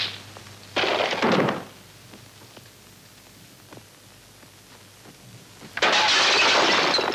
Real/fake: real